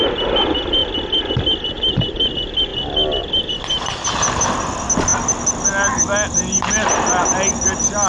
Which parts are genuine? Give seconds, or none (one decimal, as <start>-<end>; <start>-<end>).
0.0-8.1